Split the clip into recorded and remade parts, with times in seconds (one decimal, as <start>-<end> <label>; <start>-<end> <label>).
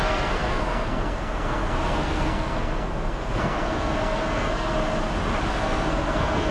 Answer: 0.0-4.8 remade; 4.8-5.5 recorded; 5.5-6.5 remade